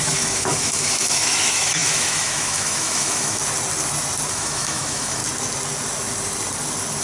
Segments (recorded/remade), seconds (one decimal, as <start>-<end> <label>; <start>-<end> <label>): 0.0-3.4 remade; 3.4-4.3 recorded; 4.3-5.2 remade; 5.2-7.0 recorded